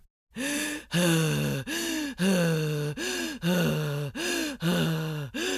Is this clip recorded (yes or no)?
yes